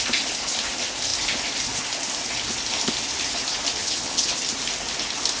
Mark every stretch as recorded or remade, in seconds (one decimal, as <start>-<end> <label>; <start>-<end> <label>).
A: 0.0-3.8 recorded; 3.8-4.3 remade; 4.3-5.4 recorded